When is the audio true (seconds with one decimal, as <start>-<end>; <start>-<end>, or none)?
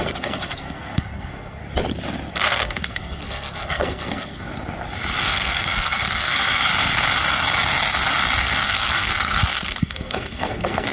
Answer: 1.6-2.3; 4.5-5.2; 6.7-8.4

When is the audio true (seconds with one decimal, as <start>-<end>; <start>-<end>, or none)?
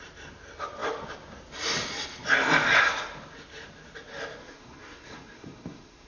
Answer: 0.0-4.4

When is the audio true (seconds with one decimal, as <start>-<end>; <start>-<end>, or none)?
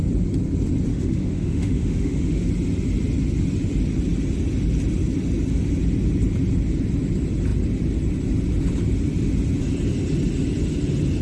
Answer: 0.0-0.9; 2.5-11.2